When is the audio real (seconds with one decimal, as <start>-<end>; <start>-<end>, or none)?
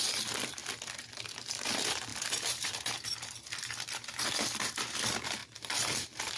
0.6-1.1